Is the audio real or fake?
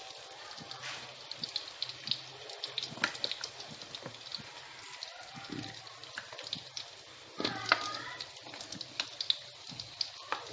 real